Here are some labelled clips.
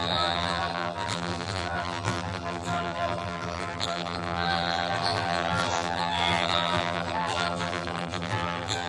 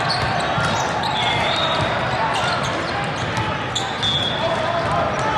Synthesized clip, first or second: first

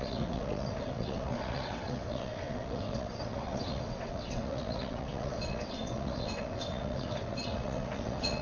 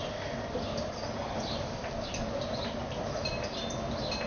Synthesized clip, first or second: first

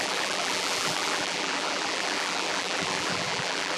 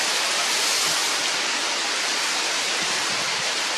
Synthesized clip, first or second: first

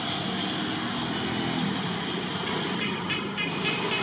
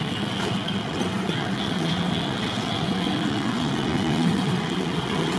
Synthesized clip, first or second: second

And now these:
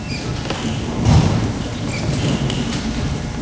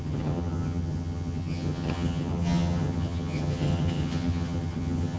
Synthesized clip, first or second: second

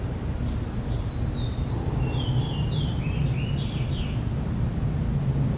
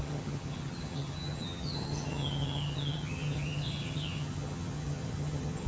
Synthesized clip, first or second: second